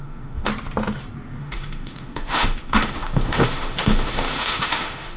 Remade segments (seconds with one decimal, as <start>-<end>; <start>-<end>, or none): 0.0-0.5; 1.4-5.2